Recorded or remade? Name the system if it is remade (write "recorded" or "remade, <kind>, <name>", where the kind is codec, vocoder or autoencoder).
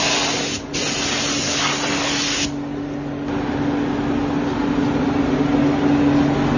recorded